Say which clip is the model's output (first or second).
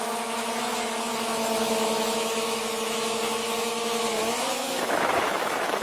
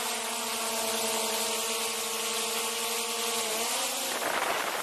first